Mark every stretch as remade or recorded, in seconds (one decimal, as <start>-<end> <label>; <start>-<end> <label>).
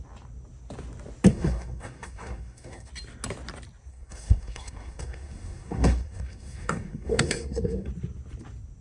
0.0-1.3 recorded; 1.3-2.9 remade; 2.9-3.9 recorded; 3.9-7.9 remade; 7.9-8.8 recorded